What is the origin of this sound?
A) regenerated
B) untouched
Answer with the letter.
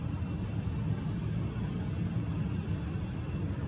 B